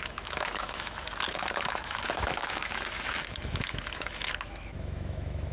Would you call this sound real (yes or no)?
no